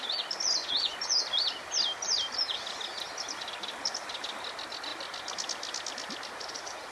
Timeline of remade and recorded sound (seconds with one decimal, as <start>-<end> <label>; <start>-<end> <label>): 0.0-0.6 recorded; 0.6-1.2 remade; 1.2-6.9 recorded